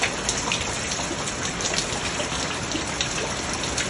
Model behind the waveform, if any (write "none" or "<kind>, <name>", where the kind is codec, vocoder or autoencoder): none